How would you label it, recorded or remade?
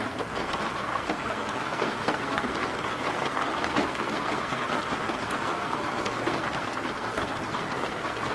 remade